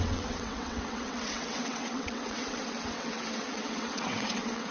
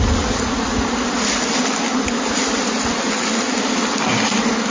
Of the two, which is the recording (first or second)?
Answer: second